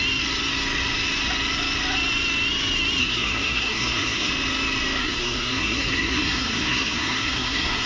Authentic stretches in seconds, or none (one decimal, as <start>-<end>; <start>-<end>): 0.0-3.0; 4.3-5.0